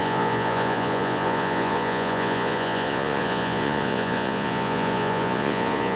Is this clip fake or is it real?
fake